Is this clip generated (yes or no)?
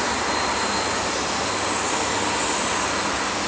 no